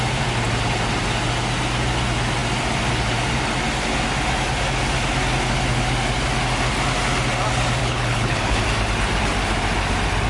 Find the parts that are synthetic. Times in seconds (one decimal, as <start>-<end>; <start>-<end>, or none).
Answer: 7.8-8.6